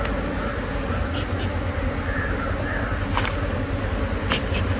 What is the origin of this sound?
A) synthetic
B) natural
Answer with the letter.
B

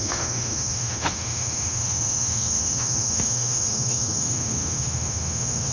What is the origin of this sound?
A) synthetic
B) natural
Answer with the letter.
A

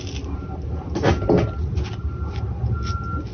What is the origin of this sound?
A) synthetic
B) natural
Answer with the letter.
B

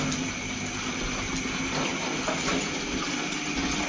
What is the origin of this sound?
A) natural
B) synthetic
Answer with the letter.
A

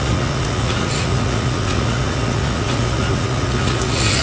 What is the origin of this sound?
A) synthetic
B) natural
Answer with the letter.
A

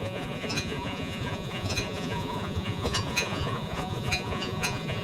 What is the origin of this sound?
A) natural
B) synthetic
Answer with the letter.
B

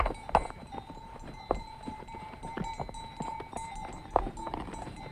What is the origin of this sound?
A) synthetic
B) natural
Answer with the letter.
B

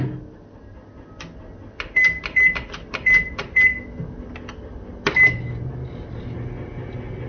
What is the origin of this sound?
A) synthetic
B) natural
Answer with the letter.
B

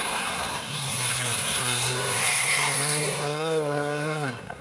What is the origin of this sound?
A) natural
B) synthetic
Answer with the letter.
B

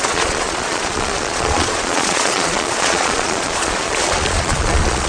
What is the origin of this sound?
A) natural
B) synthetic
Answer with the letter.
B